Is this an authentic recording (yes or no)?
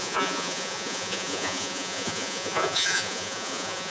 no